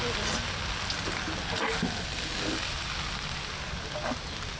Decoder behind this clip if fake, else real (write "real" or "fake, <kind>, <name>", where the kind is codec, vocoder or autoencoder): real